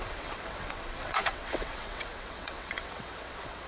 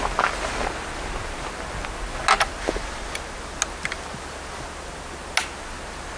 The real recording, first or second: second